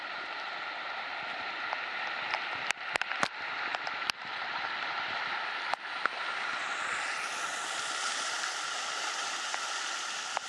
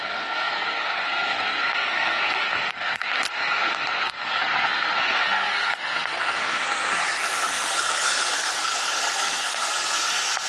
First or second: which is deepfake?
second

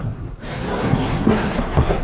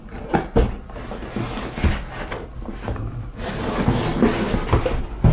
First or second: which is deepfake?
first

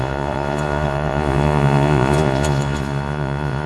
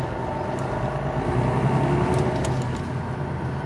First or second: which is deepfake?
first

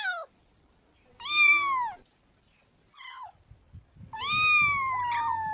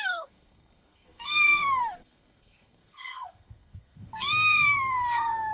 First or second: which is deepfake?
second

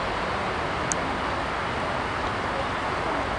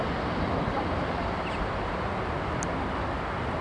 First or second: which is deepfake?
second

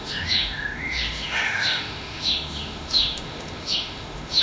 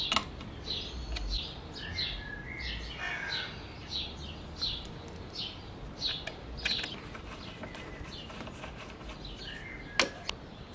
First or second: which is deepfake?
first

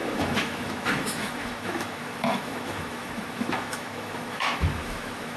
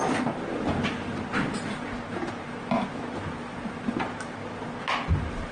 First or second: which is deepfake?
first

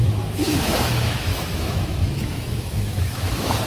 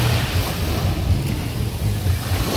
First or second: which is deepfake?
first